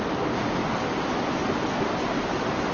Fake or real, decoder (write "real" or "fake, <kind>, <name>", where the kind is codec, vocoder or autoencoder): real